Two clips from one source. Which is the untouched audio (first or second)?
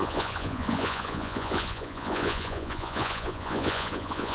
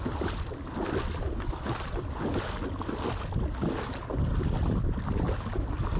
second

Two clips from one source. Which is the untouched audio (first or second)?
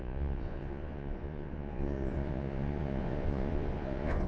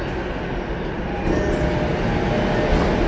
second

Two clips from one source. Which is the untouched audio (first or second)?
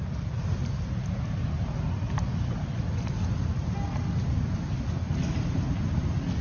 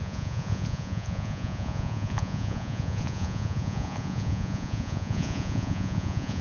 first